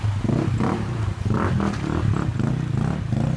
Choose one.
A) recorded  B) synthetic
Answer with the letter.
A